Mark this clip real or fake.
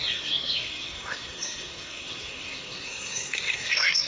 fake